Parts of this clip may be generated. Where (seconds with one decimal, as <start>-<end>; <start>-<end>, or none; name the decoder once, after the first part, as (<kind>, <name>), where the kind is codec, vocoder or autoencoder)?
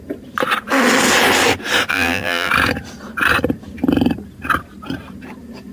1.9-2.5 (vocoder, BigVGAN v2)